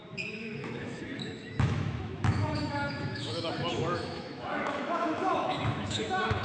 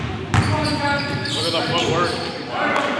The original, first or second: second